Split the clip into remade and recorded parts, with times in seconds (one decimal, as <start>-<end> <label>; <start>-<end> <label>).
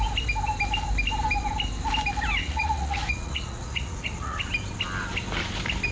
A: 0.0-2.4 recorded; 2.4-4.5 remade; 4.5-5.9 recorded